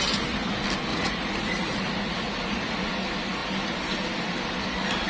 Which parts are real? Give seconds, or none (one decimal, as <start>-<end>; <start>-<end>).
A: 0.0-0.9; 2.8-5.1